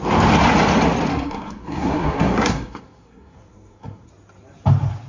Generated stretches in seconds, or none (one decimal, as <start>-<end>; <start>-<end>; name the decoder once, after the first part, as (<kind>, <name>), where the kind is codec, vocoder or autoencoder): 1.1-4.1 (codec, SNAC)

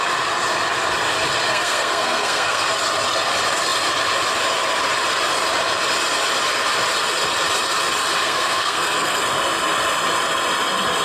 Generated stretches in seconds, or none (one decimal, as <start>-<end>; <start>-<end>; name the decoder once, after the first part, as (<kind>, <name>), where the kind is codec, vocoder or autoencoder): 1.5-2.6 (codec, SNAC); 8.2-9.2

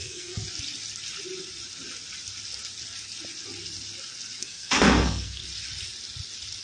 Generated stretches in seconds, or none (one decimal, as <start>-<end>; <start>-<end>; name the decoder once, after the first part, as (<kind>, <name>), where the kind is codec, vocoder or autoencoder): 0.0-0.4 (codec, SNAC); 4.4-5.4

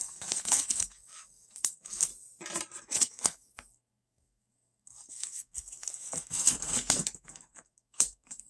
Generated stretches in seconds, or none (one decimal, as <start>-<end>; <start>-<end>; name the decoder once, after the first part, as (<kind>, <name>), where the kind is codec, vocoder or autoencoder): 0.0-2.1 (codec, SNAC); 2.8-8.5